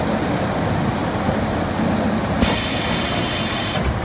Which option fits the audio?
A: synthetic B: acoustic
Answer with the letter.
B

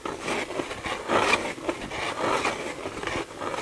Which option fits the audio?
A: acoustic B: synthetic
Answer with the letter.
A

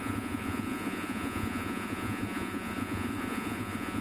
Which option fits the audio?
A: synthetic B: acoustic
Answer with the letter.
A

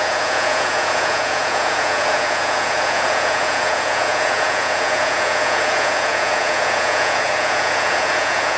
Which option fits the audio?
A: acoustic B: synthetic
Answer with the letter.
B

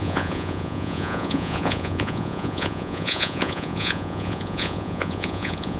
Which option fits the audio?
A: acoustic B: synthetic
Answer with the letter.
B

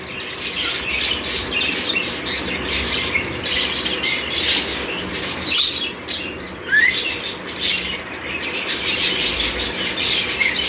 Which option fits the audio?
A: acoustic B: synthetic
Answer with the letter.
A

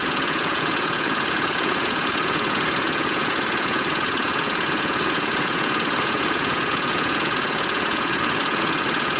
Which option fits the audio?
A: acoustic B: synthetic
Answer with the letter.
B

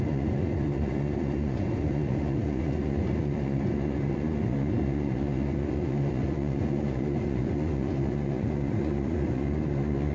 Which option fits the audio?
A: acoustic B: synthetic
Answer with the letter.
B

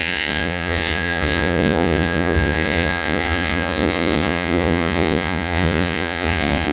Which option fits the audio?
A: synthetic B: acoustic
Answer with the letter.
A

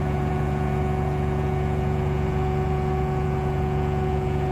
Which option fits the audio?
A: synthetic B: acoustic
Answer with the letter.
A